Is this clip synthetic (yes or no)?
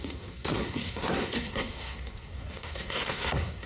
yes